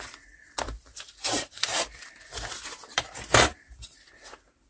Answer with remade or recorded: remade